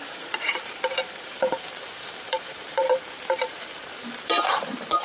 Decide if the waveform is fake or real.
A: fake